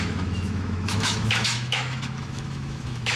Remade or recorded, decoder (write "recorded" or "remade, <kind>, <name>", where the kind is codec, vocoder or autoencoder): remade, autoencoder, DAC-VAE